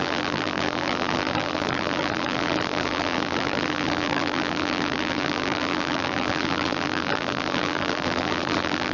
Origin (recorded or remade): remade